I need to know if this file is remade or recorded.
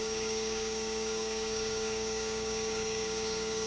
remade